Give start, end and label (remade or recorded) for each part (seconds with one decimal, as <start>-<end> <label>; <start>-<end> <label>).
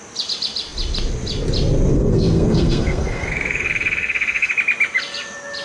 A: 0.0-1.9 recorded; 1.9-4.5 remade; 4.5-5.6 recorded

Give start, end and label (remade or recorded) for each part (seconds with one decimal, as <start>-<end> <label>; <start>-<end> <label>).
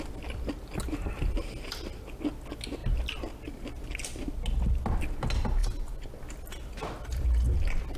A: 0.0-8.0 recorded